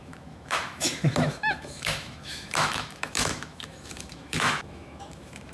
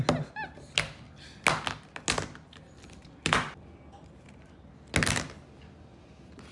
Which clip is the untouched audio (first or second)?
second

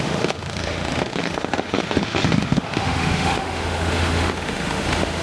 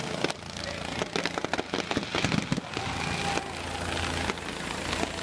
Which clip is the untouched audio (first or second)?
second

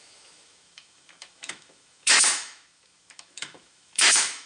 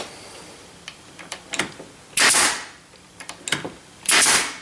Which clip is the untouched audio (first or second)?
second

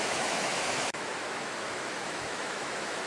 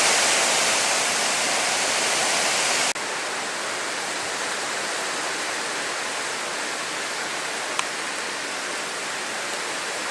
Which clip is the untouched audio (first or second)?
second